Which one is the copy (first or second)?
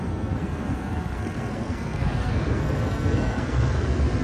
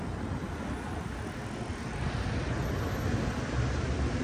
first